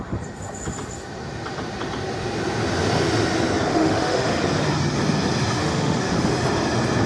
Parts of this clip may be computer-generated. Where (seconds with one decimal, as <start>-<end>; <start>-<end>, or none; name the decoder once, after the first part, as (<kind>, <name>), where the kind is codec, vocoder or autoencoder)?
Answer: 3.7-4.4 (autoencoder, DAC-VAE); 5.6-6.3